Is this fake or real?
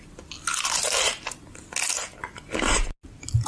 real